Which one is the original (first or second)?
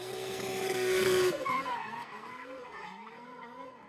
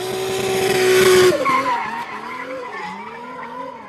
second